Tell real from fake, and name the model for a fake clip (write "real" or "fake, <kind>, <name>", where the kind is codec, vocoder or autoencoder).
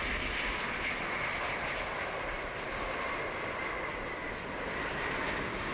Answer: real